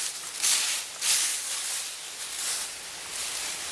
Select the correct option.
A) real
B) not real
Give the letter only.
A